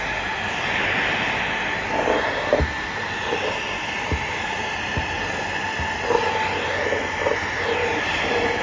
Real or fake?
real